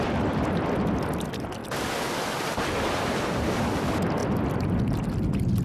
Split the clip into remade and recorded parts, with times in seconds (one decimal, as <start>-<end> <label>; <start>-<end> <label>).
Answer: 0.0-5.6 recorded